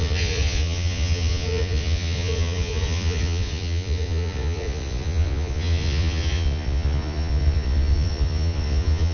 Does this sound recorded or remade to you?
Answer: remade